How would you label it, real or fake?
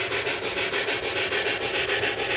real